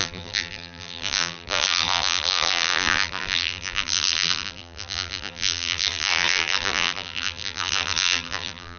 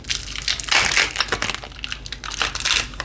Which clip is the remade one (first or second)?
first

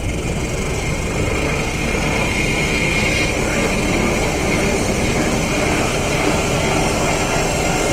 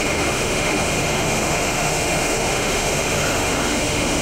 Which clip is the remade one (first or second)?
second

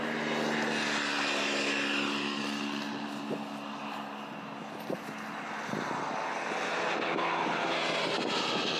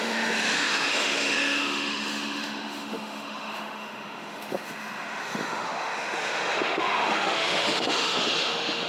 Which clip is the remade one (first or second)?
second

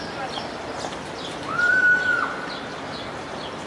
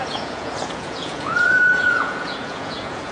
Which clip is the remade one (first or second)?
second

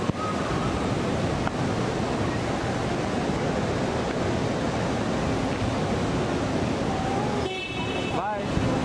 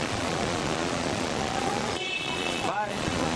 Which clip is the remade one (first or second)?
second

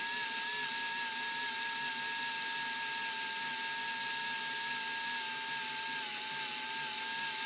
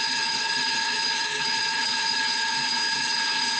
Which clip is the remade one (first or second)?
second